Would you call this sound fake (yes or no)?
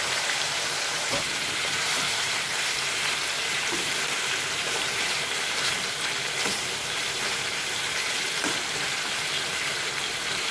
yes